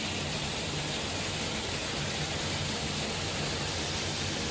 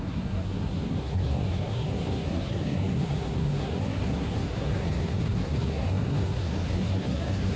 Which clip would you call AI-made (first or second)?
second